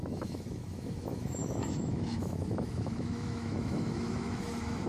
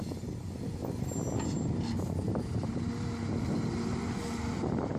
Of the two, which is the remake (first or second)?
first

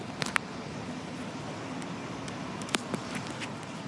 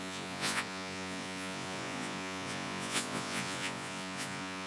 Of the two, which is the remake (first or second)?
second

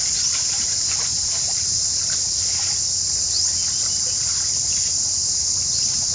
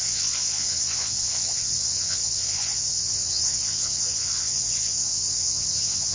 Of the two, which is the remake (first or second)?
second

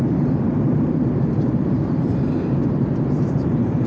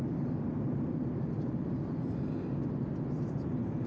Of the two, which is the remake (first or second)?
first